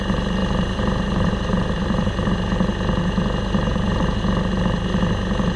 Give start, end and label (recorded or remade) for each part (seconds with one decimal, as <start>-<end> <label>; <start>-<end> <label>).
0.0-0.4 recorded; 0.4-2.3 remade; 2.3-3.7 recorded; 3.7-4.2 remade; 4.2-5.6 recorded